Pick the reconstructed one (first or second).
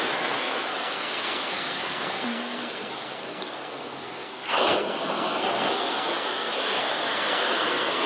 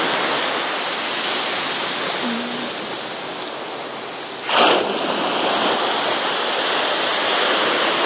first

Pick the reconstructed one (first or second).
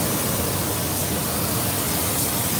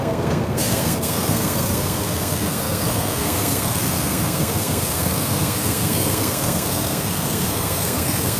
second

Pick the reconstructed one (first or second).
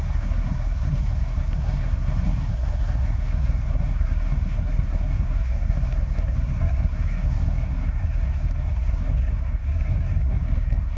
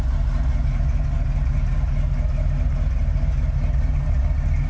first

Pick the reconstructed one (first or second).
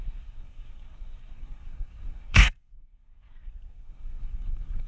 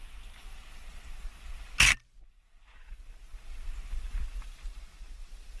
first